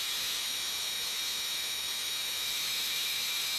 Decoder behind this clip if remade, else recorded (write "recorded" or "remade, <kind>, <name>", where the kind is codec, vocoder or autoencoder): remade, autoencoder, DAC-VAE